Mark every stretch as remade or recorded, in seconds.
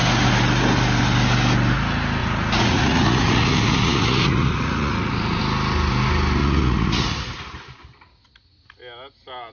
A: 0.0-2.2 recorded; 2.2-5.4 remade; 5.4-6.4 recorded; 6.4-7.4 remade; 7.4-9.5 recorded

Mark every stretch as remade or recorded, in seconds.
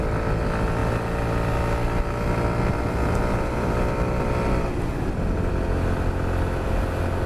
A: 0.0-7.3 recorded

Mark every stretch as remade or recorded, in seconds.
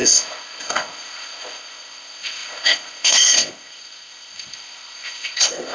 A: 0.0-5.7 remade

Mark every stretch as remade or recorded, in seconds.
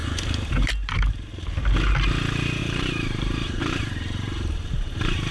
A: 0.0-1.3 remade; 1.3-2.6 recorded; 2.6-5.3 remade